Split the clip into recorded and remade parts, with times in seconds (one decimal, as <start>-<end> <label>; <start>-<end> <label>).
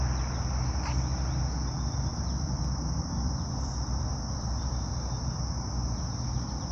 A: 0.0-2.1 recorded; 2.1-4.7 remade; 4.7-6.7 recorded